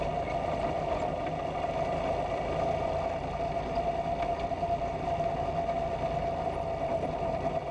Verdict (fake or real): real